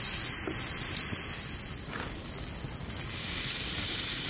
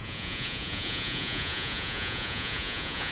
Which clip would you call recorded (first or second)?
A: first